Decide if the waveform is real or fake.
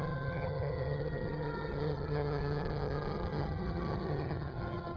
fake